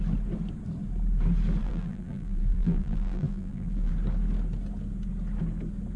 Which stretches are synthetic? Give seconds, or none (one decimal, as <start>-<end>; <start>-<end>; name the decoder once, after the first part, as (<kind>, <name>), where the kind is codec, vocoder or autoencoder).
1.6-3.9 (vocoder, BigVGAN v2)